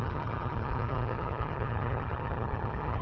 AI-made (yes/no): yes